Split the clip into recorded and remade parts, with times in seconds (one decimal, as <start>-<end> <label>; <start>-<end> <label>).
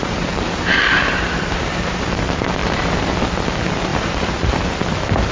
0.0-2.2 remade; 2.2-2.6 recorded; 2.6-3.1 remade; 3.1-3.9 recorded; 3.9-4.6 remade; 4.6-5.3 recorded